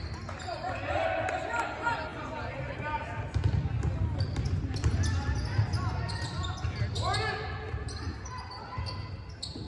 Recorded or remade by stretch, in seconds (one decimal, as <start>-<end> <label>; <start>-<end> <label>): 0.0-9.7 recorded